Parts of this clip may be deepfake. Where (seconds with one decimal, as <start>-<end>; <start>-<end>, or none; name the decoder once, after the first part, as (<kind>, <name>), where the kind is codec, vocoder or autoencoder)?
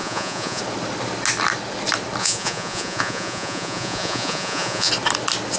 0.0-0.6 (vocoder, Vocos); 2.2-4.9